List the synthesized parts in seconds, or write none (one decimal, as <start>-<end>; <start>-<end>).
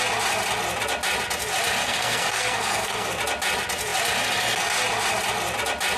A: 1.8-3.2